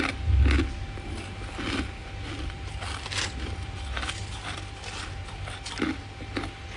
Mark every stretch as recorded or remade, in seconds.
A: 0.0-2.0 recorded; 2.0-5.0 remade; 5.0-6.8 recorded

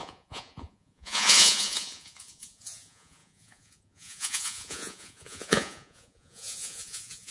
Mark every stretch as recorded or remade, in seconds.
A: 0.0-7.3 remade

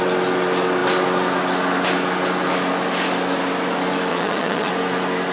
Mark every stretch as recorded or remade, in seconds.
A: 0.0-4.1 recorded; 4.1-4.7 remade; 4.7-5.3 recorded